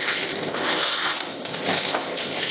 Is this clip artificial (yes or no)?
yes